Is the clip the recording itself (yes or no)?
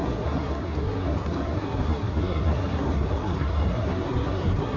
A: no